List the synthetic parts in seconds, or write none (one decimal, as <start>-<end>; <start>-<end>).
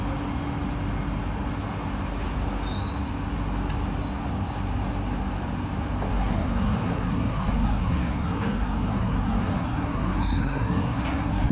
6.1-11.5